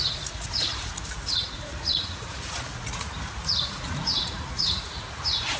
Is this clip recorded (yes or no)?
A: no